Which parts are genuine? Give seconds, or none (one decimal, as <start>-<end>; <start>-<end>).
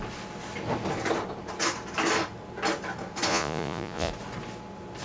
0.0-3.3; 4.1-5.0